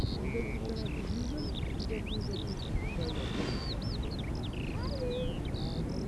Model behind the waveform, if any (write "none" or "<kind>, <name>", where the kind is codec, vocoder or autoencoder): none